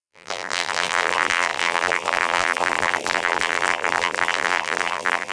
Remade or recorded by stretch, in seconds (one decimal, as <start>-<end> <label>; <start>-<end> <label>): 0.0-5.3 remade